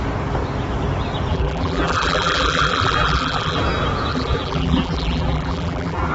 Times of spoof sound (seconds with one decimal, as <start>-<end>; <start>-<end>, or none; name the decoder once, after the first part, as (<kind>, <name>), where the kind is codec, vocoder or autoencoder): 1.3-3.6 (vocoder, BigVGAN v2); 4.1-6.1